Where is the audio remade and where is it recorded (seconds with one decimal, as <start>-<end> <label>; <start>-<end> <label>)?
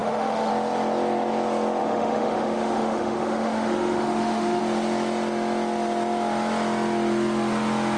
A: 0.0-0.5 remade; 0.5-1.8 recorded; 1.8-4.6 remade; 4.6-8.0 recorded